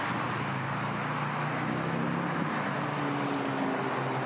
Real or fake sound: real